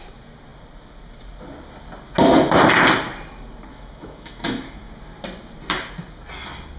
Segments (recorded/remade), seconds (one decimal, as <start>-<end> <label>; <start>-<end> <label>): 0.0-3.7 recorded; 3.7-4.9 remade; 4.9-6.8 recorded

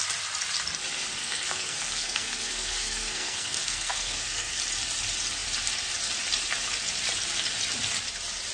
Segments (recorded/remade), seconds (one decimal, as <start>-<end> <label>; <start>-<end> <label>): 0.0-1.2 recorded; 1.2-4.6 remade; 4.6-8.5 recorded

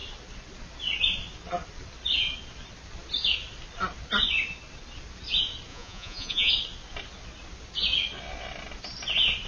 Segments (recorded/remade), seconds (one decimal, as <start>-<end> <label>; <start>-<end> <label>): 0.0-5.7 recorded; 5.7-6.5 remade; 6.5-9.5 recorded

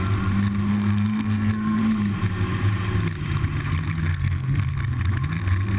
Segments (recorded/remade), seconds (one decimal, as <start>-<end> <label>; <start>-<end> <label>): 0.0-0.7 recorded; 0.7-1.8 remade; 1.8-4.1 recorded; 4.1-4.7 remade; 4.7-5.8 recorded

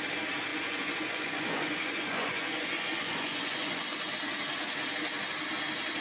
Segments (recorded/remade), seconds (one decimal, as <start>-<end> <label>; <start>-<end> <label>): 0.0-0.5 recorded; 0.5-4.1 remade; 4.1-6.0 recorded

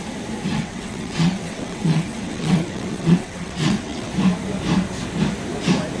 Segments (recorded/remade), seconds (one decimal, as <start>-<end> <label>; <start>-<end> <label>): 0.0-0.5 recorded; 0.5-4.1 remade; 4.1-6.0 recorded

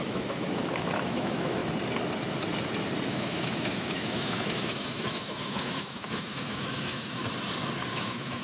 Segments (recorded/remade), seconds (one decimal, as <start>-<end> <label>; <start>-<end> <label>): 0.0-1.6 remade; 1.6-3.1 recorded; 3.1-7.2 remade; 7.2-7.9 recorded; 7.9-8.4 remade